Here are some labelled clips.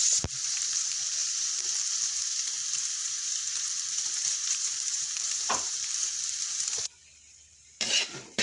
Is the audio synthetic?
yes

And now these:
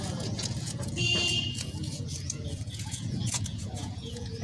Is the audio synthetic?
yes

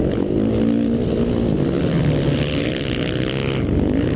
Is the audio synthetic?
no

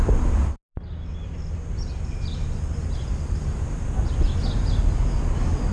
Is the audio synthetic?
no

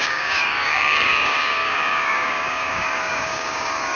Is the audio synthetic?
yes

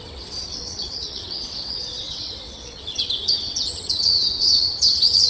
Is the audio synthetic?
yes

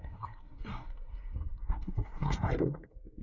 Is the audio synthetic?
yes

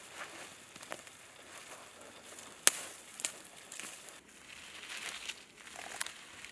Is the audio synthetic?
no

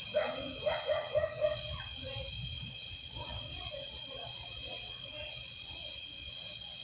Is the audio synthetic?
yes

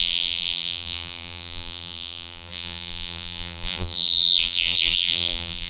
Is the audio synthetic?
yes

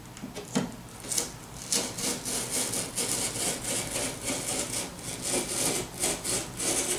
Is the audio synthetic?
no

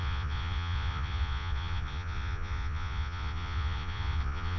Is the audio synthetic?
yes